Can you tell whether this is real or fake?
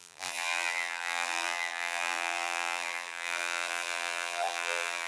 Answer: fake